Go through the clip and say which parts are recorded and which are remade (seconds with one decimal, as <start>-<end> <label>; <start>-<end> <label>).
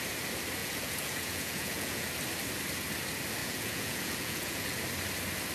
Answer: 0.0-0.6 recorded; 0.6-2.1 remade; 2.1-3.4 recorded; 3.4-4.8 remade; 4.8-5.5 recorded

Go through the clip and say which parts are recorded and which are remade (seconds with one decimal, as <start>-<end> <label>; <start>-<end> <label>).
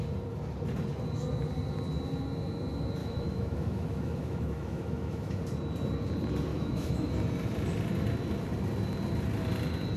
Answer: 0.0-3.0 recorded; 3.0-5.4 remade; 5.4-6.5 recorded; 6.5-7.1 remade; 7.1-10.0 recorded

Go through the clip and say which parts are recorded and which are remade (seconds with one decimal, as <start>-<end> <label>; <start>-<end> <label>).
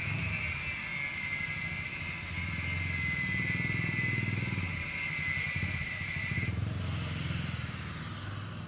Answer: 0.0-5.8 recorded; 5.8-6.8 remade; 6.8-8.7 recorded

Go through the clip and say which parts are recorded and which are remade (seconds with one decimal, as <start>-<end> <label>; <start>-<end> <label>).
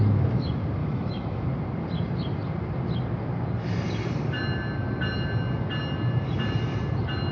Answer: 0.0-0.8 recorded; 0.8-1.5 remade; 1.5-7.3 recorded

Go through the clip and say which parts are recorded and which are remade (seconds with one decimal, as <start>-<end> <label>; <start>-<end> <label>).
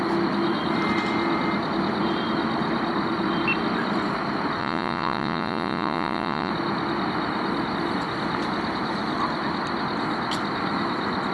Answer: 0.0-4.6 recorded; 4.6-6.5 remade; 6.5-11.3 recorded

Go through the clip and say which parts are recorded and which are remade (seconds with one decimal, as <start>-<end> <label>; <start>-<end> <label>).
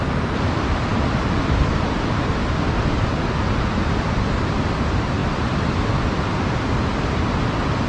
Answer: 0.0-7.9 recorded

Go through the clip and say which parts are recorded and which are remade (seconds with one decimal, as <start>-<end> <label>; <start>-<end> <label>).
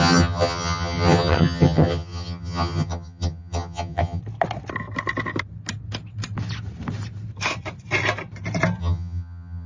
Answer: 0.0-4.2 remade; 4.2-8.8 recorded; 8.8-9.7 remade